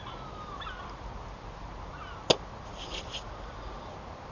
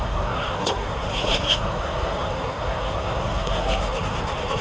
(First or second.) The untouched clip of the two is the first